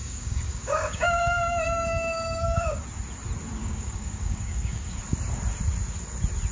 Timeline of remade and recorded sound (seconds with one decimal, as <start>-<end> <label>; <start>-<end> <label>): 0.0-2.8 remade; 2.8-3.6 recorded; 3.6-5.0 remade; 5.0-6.5 recorded